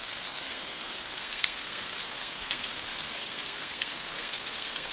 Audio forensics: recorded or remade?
remade